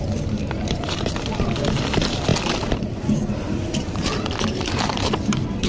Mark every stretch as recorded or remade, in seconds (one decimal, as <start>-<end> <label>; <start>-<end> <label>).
0.0-5.7 remade